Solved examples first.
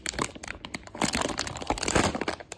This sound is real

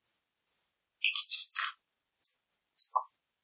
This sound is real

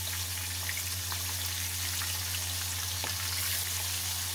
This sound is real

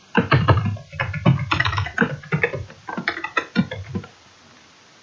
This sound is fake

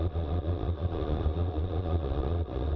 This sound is fake